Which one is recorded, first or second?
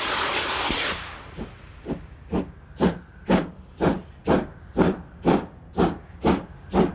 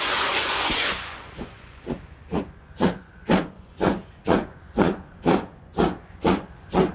first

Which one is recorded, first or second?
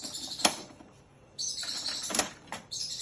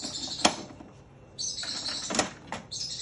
second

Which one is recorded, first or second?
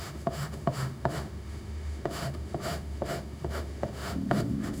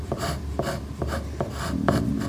second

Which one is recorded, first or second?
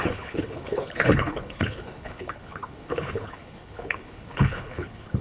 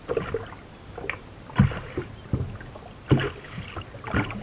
second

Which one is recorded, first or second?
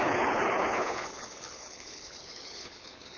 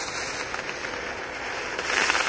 second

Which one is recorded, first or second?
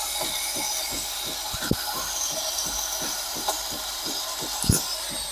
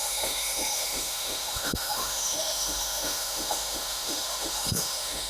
first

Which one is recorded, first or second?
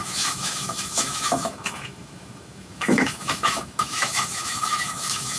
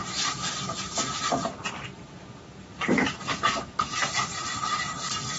second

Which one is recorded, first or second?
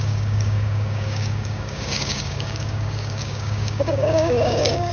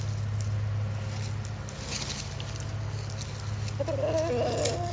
second